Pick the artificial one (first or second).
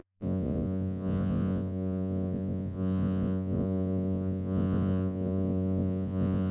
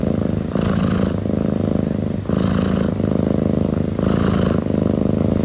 first